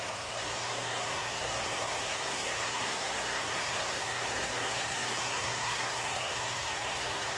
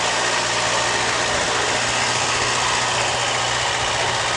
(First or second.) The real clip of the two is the second